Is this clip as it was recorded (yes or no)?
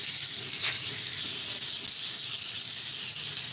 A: yes